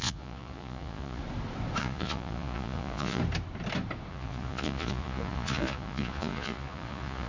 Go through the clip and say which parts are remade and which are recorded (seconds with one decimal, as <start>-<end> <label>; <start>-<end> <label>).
0.0-1.2 remade; 1.2-1.8 recorded; 1.8-3.2 remade; 3.2-4.1 recorded; 4.1-7.3 remade